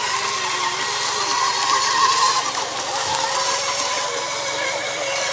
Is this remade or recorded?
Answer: recorded